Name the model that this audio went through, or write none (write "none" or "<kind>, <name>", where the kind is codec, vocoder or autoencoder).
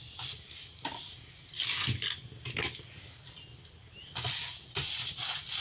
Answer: none